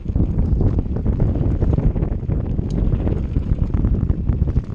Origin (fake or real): real